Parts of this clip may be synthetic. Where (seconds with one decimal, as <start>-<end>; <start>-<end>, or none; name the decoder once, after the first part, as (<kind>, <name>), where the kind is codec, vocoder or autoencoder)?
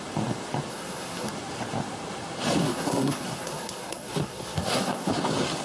0.7-1.3 (codec, SNAC); 2.6-5.1